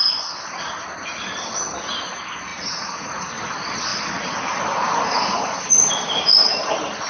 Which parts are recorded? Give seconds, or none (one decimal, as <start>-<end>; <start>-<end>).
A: 0.0-2.5; 3.3-7.1